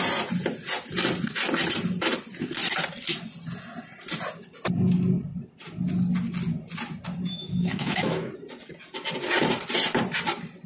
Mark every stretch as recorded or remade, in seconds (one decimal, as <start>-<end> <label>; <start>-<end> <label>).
0.0-7.3 recorded; 7.3-8.3 remade; 8.3-10.7 recorded